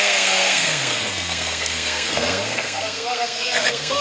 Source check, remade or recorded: remade